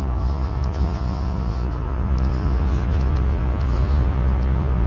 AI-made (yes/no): yes